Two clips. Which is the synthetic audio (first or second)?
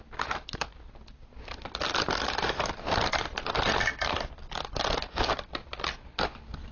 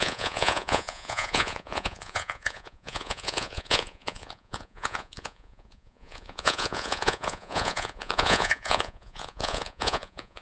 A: second